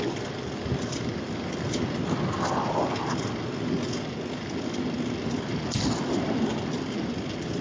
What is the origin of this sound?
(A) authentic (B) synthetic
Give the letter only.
A